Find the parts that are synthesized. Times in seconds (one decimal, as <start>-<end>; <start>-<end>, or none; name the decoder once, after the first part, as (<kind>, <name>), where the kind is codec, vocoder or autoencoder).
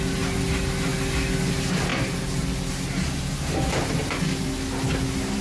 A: none